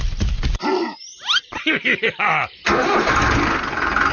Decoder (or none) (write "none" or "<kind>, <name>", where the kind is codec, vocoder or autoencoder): vocoder, BigVGAN v2